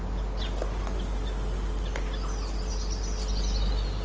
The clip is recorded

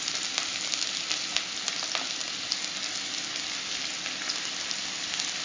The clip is recorded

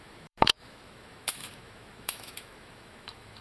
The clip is remade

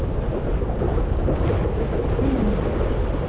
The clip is recorded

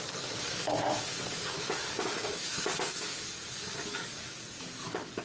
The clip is remade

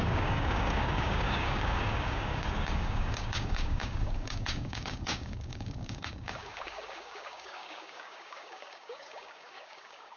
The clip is remade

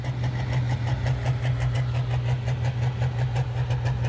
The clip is recorded